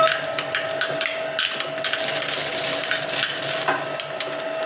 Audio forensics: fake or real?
real